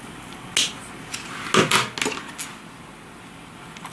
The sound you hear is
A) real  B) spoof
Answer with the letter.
A